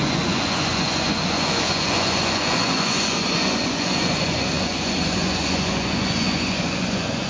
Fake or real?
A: fake